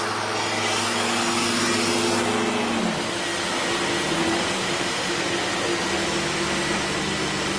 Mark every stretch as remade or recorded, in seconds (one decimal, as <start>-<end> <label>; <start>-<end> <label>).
0.0-4.6 recorded; 4.6-5.2 remade; 5.2-7.6 recorded